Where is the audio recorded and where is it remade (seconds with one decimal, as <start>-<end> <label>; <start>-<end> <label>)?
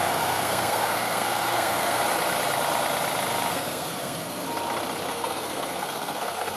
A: 0.0-2.0 remade; 2.0-3.5 recorded; 3.5-4.4 remade; 4.4-5.1 recorded; 5.1-6.6 remade